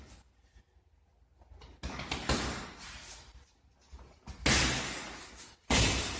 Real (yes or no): yes